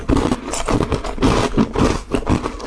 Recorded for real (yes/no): yes